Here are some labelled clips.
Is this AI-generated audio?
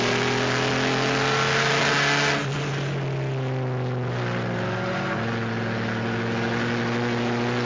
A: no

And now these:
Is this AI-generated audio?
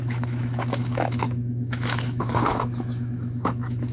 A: yes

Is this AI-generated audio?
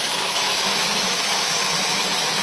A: yes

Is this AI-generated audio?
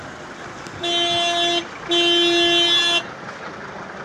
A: no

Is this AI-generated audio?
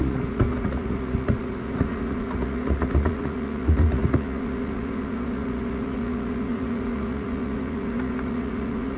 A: yes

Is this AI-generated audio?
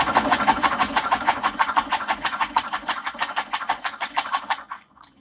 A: yes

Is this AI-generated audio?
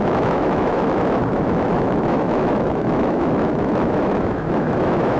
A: yes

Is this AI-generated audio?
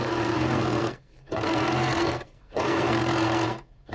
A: yes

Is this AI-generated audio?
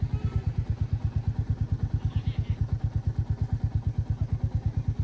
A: no